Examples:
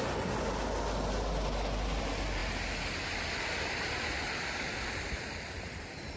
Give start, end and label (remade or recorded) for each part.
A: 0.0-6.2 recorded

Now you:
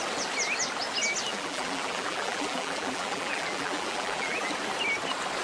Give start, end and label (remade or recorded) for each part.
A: 0.0-1.3 recorded; 1.3-4.5 remade; 4.5-5.4 recorded

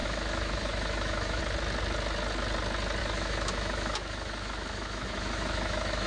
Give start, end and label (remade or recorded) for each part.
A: 0.0-1.4 remade; 1.4-3.0 recorded; 3.0-6.1 remade

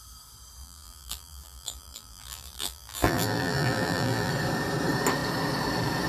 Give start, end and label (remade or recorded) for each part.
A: 0.0-0.6 recorded; 0.6-4.3 remade; 4.3-6.1 recorded

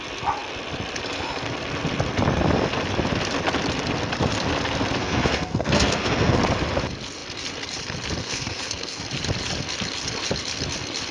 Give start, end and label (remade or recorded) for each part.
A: 0.0-5.0 recorded; 5.0-6.4 remade; 6.4-8.2 recorded; 8.2-9.0 remade; 9.0-11.1 recorded

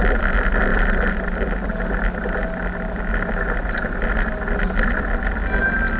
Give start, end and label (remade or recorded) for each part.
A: 0.0-0.7 recorded; 0.7-1.7 remade; 1.7-6.0 recorded